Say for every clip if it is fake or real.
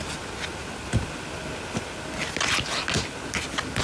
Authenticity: real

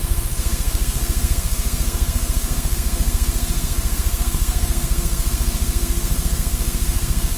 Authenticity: fake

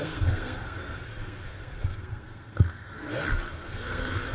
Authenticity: fake